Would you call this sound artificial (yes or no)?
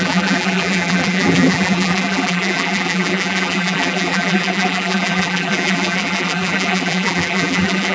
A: yes